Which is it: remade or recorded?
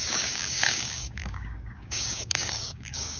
remade